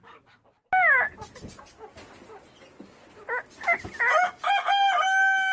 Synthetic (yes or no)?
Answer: no